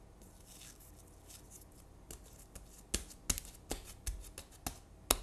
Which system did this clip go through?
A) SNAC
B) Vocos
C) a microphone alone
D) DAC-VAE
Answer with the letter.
C